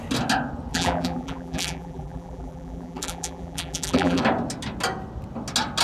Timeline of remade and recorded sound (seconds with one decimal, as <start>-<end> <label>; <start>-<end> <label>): 0.0-0.7 recorded; 0.7-4.2 remade; 4.2-5.8 recorded